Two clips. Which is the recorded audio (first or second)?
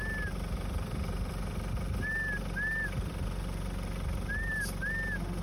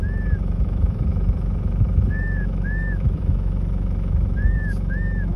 first